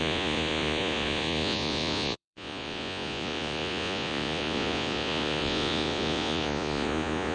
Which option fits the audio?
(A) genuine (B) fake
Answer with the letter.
B